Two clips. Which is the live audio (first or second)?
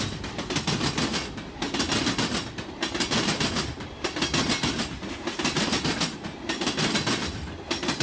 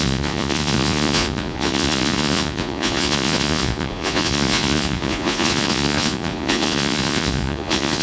first